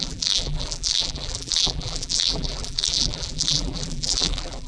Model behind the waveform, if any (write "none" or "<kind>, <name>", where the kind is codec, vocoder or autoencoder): vocoder, BigVGAN v2